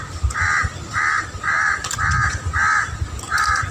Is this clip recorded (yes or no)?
yes